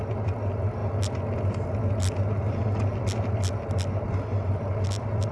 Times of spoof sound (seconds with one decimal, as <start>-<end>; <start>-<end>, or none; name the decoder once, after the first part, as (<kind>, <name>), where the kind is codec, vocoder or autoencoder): none